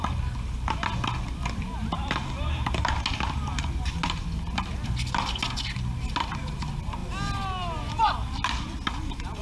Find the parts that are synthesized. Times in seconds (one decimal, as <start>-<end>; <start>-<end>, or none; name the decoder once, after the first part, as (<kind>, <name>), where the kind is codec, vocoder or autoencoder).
none